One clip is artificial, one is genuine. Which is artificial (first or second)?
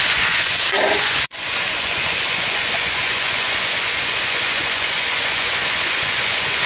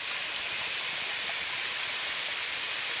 first